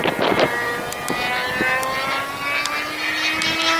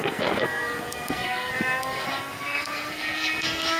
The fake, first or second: second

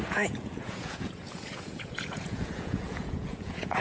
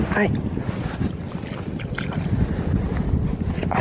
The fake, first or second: first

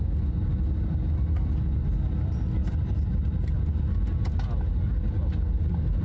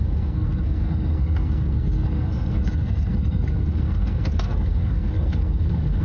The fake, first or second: second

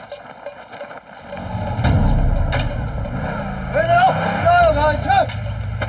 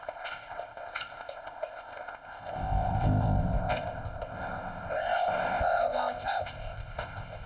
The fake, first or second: second